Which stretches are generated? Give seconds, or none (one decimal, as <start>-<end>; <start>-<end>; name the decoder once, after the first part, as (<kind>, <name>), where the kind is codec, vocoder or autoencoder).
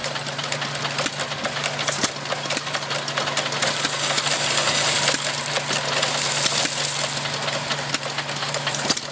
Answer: none